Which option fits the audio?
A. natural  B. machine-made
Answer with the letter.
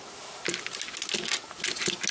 A